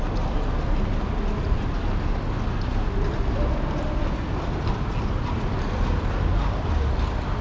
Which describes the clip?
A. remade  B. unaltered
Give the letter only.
B